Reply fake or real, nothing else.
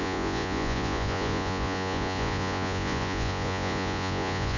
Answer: fake